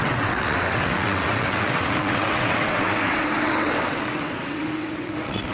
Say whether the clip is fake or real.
fake